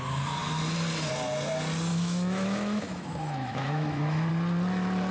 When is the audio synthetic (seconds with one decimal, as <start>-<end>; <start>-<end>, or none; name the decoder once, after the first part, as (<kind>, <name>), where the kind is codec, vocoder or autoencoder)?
1.9-4.3 (autoencoder, DAC-VAE)